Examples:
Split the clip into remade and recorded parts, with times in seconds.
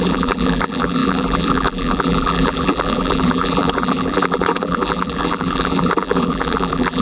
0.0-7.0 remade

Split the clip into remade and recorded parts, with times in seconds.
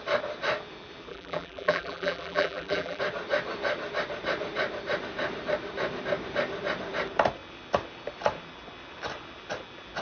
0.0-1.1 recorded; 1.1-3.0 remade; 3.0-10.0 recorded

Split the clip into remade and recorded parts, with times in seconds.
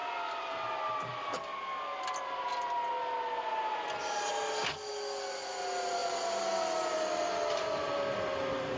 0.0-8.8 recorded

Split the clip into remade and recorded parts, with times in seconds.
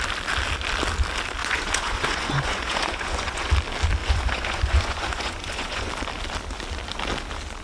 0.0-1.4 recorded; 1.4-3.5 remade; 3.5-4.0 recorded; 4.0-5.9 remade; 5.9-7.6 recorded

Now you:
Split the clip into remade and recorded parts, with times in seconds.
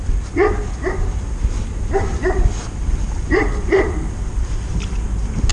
0.0-2.2 recorded; 2.2-5.5 remade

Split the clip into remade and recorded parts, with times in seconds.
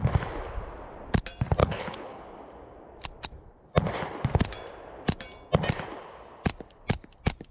0.0-1.6 recorded; 1.6-2.2 remade; 2.2-7.5 recorded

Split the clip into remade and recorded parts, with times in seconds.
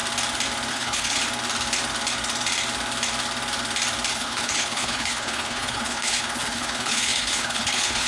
0.0-0.7 recorded; 0.7-1.2 remade; 1.2-4.1 recorded; 4.1-8.1 remade